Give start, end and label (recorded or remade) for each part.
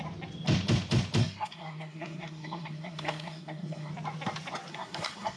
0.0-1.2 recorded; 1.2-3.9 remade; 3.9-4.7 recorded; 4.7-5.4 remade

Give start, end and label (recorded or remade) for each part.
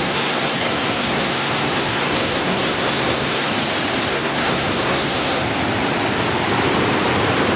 0.0-3.5 remade; 3.5-4.1 recorded; 4.1-5.4 remade; 5.4-7.6 recorded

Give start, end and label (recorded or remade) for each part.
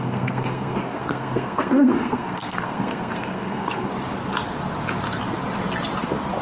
0.0-3.9 remade; 3.9-6.4 recorded